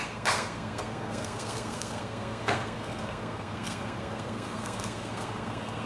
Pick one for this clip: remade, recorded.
remade